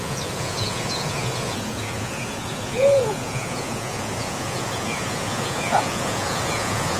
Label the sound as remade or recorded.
remade